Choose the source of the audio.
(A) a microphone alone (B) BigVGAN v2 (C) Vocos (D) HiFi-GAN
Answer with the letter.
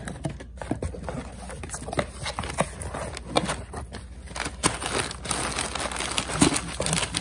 A